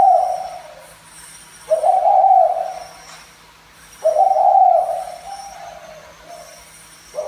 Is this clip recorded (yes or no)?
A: yes